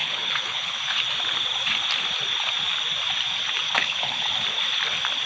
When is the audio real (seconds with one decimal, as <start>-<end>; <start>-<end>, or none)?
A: 0.9-3.8; 4.3-5.3